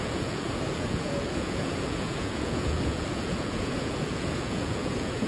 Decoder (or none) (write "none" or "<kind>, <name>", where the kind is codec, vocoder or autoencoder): vocoder, Vocos